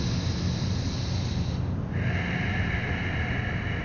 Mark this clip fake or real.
real